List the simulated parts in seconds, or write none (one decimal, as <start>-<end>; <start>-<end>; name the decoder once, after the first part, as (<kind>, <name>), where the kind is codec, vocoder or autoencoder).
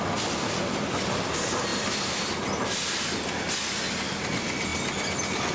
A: none